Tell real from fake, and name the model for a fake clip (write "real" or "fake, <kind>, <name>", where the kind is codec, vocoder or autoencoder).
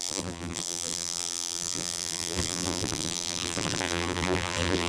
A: fake, vocoder, BigVGAN v2